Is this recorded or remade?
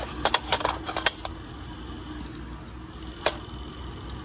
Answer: recorded